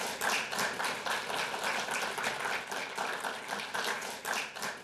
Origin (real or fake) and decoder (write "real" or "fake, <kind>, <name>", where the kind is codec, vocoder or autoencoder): real